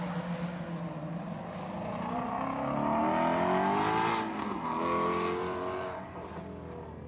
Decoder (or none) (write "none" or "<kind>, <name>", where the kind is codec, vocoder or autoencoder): none